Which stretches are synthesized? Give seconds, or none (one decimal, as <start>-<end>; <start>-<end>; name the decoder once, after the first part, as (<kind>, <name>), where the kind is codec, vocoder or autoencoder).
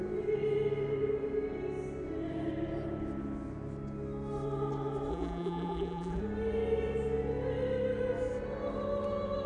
5.1-6.2 (vocoder, BigVGAN v2)